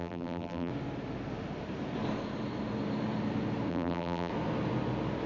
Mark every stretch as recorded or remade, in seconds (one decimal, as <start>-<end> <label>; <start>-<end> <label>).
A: 0.0-0.7 remade; 0.7-3.7 recorded; 3.7-4.3 remade; 4.3-5.3 recorded

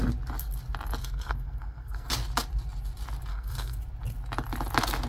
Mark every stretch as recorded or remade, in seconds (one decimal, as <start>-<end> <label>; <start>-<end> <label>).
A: 0.0-1.0 recorded; 1.0-2.1 remade; 2.1-3.3 recorded; 3.3-3.8 remade; 3.8-5.1 recorded

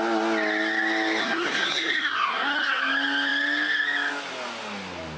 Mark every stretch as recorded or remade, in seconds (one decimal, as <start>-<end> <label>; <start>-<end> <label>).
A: 0.0-1.2 recorded; 1.2-2.8 remade; 2.8-5.2 recorded

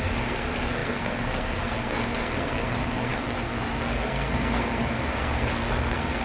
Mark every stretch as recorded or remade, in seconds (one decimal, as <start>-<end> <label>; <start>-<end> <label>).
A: 0.0-6.2 remade

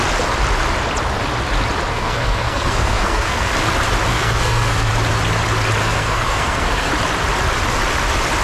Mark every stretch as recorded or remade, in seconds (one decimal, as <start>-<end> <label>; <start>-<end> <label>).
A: 0.0-1.9 recorded; 1.9-3.5 remade; 3.5-4.1 recorded; 4.1-4.9 remade; 4.9-5.8 recorded; 5.8-6.9 remade; 6.9-8.4 recorded